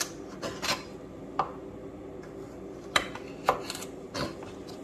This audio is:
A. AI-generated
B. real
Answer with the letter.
B